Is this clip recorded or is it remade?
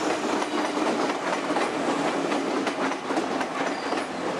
recorded